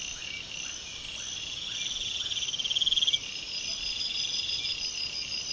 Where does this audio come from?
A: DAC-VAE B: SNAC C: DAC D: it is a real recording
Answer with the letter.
D